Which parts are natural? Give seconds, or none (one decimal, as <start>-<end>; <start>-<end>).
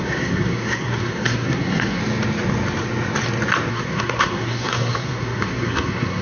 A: 2.0-3.7